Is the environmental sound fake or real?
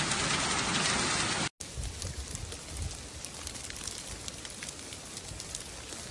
real